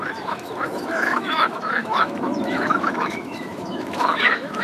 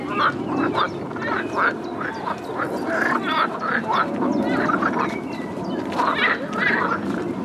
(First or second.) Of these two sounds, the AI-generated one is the first